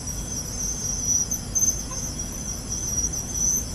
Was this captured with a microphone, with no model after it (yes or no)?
yes